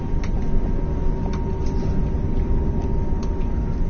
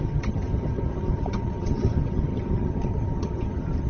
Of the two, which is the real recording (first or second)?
first